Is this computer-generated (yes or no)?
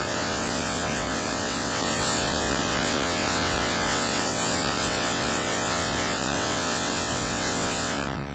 yes